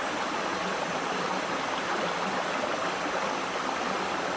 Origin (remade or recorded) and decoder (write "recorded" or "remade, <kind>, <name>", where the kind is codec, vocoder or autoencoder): recorded